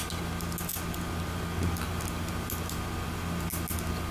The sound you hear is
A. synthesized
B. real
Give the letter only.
B